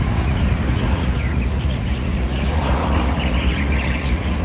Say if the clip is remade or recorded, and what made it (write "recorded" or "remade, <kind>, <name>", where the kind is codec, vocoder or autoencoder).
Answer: remade, vocoder, Vocos